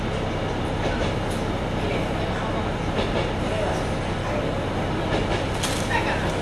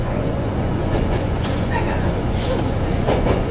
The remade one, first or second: second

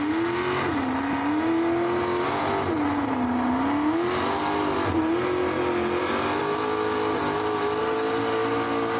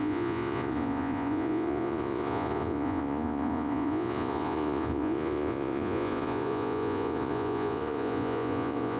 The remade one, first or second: second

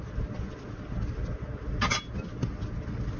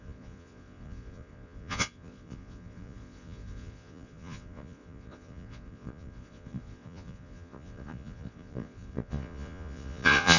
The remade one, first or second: second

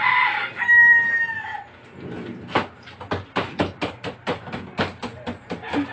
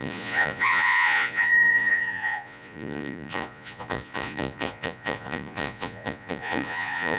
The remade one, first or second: second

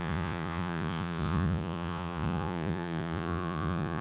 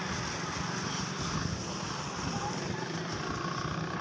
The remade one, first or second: first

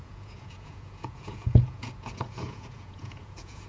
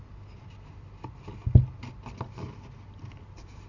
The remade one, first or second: first